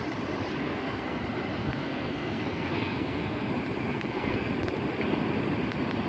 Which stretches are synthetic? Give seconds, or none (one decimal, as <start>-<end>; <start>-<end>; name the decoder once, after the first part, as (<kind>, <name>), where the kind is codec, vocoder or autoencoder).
0.6-1.2 (codec, SNAC); 1.6-3.5; 3.9-4.5